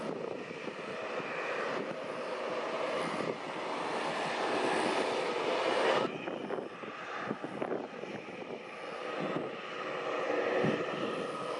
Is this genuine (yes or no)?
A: yes